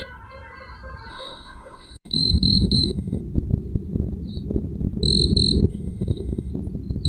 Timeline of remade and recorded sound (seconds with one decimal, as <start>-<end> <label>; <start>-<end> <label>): 0.0-1.1 recorded; 1.1-3.2 remade; 3.2-5.7 recorded; 5.7-6.5 remade; 6.5-7.1 recorded